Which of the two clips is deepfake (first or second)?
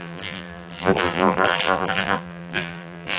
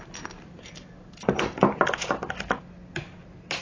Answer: first